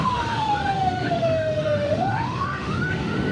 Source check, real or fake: fake